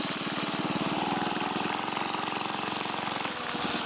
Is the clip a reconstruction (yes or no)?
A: no